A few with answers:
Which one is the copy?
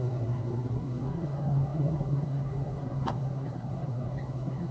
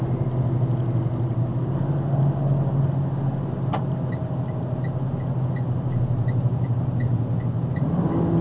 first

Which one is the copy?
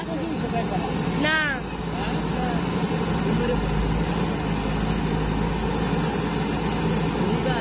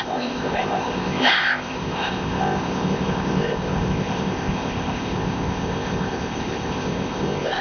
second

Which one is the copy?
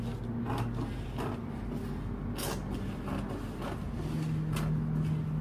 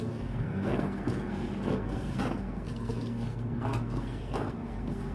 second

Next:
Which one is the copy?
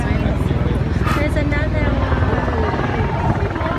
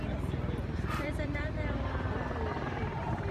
second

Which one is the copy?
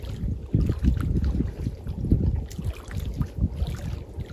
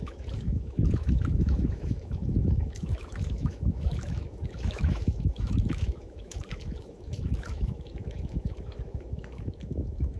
second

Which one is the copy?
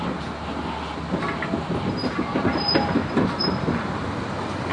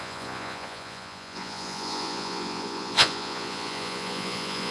second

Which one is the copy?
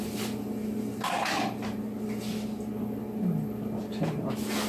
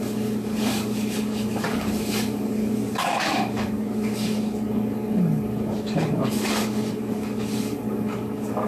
second